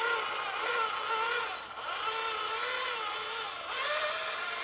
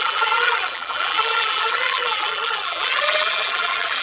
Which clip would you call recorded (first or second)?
first